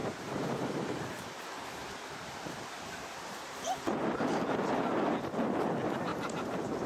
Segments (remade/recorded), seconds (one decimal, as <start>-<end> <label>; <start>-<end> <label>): 0.0-4.1 remade; 4.1-6.1 recorded; 6.1-6.9 remade